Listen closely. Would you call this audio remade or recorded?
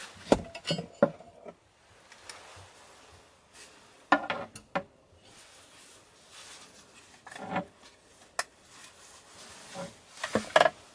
recorded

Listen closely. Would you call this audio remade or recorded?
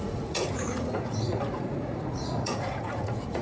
remade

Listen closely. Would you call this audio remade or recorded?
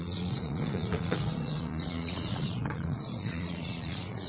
remade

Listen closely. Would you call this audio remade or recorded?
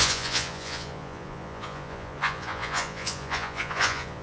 remade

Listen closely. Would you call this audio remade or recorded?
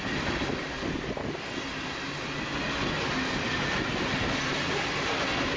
recorded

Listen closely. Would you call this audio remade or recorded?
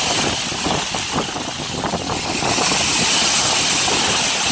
recorded